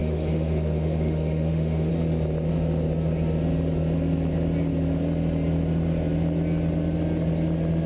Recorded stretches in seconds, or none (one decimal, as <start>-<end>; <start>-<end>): 1.9-7.9